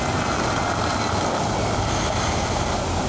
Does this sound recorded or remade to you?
recorded